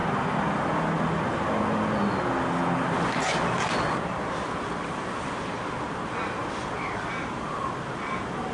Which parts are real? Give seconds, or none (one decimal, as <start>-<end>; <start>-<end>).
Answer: 0.0-8.5